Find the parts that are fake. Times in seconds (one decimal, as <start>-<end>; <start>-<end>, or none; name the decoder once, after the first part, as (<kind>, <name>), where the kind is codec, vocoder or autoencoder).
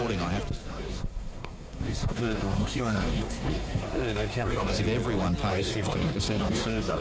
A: 0.6-4.8 (codec, SNAC); 5.5-7.0